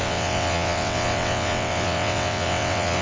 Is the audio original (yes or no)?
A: no